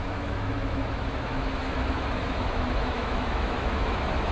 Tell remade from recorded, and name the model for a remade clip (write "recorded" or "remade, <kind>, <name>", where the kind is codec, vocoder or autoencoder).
remade, autoencoder, DAC-VAE